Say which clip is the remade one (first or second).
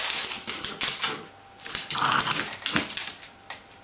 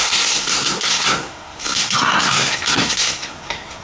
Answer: second